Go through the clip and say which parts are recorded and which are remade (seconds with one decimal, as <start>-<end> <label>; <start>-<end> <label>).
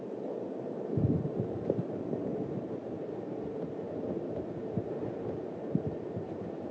0.0-6.7 remade